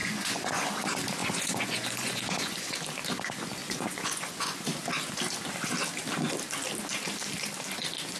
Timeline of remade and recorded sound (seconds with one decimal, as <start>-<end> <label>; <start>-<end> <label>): 0.0-0.7 remade; 0.7-1.2 recorded; 1.2-2.7 remade; 2.7-3.6 recorded; 3.6-4.6 remade; 4.6-8.2 recorded